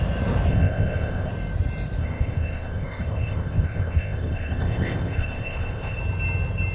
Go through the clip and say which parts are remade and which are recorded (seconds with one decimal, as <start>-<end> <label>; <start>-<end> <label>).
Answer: 0.0-0.5 recorded; 0.5-1.3 remade; 1.3-2.0 recorded; 2.0-6.0 remade; 6.0-6.7 recorded